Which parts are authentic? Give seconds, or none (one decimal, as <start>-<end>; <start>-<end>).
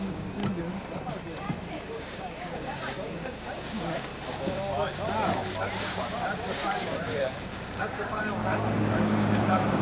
0.4-1.7; 4.1-5.8